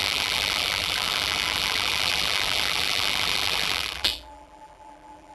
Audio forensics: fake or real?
fake